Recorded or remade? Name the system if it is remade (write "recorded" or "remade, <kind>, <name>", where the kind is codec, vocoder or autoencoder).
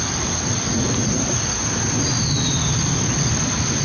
recorded